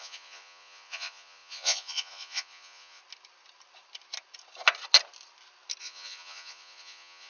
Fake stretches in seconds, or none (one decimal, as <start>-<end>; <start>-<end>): 0.0-3.0; 5.8-7.3